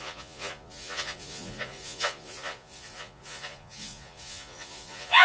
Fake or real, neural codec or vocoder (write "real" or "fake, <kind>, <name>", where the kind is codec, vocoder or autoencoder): fake, vocoder, Vocos